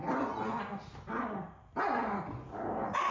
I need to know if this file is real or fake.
real